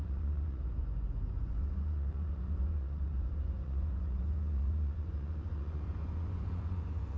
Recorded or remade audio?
remade